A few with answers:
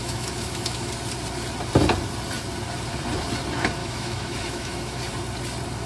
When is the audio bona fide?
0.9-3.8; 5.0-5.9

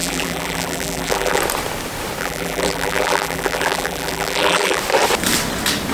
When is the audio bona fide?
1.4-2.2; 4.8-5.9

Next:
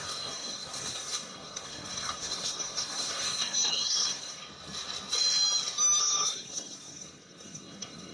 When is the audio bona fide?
4.4-6.0